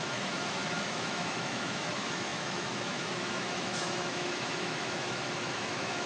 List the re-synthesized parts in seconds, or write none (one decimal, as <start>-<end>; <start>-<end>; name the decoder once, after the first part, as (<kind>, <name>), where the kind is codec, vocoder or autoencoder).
0.0-6.1 (autoencoder, DAC-VAE)